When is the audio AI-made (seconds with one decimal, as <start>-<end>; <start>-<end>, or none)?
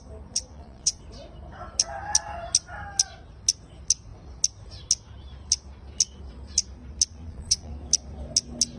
0.5-1.0; 7.1-7.7